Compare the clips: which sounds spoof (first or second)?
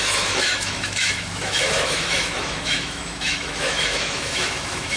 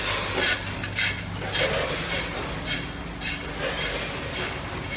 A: first